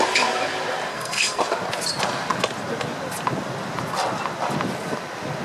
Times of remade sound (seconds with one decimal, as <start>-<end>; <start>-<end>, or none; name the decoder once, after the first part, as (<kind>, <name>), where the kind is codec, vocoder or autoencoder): 0.9-1.4 (codec, SNAC)

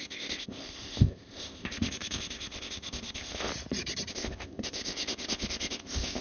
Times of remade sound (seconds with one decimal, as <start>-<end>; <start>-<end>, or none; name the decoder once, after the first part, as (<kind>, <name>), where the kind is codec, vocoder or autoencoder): 0.0-3.5 (codec, ZipCodec); 4.1-6.2

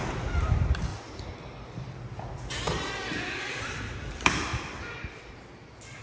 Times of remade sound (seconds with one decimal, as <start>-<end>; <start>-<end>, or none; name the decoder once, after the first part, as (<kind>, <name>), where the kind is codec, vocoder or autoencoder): 0.0-0.9 (vocoder, BigVGAN v2); 3.6-4.5; 5.2-6.0

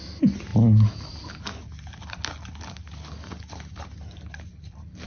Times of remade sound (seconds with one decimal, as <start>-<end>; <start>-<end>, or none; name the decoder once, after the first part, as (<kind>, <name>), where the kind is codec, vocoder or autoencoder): none

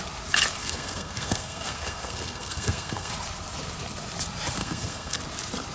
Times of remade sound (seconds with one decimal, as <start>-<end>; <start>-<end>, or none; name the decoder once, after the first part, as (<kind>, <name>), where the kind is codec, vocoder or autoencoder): 0.6-3.1 (codec, SNAC); 4.6-5.2

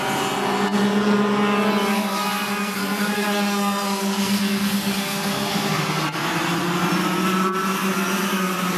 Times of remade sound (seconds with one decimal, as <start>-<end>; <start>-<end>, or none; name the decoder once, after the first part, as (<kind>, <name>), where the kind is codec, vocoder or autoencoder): 1.9-6.0 (codec, SNAC)

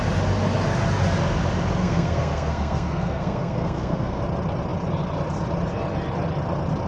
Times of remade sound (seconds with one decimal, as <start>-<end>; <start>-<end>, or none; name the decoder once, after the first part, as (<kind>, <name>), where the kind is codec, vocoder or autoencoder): 1.8-4.2 (codec, SNAC)